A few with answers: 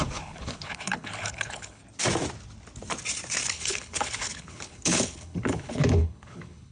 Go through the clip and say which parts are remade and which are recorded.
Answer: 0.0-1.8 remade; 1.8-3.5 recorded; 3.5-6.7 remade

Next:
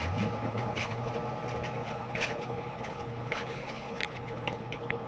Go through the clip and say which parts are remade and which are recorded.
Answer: 0.0-0.4 recorded; 0.4-1.1 remade; 1.1-1.8 recorded; 1.8-5.1 remade

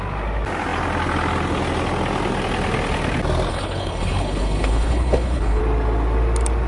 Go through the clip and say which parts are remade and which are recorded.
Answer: 0.0-3.5 recorded; 3.5-5.6 remade; 5.6-6.7 recorded

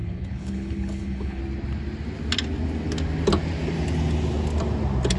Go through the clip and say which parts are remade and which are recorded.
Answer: 0.0-1.4 remade; 1.4-5.2 recorded

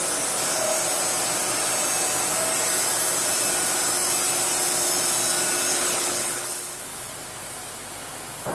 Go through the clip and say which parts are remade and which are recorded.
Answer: 0.0-5.7 recorded; 5.7-7.1 remade; 7.1-8.5 recorded

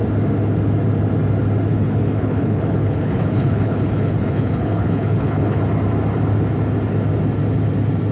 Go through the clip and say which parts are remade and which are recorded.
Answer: 0.0-1.7 recorded; 1.7-5.6 remade; 5.6-8.1 recorded

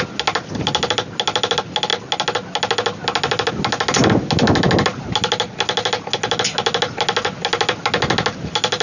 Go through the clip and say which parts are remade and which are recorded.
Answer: 0.0-8.8 recorded

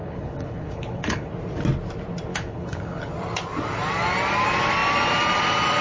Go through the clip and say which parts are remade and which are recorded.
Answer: 0.0-1.3 remade; 1.3-2.3 recorded; 2.3-3.1 remade; 3.1-5.8 recorded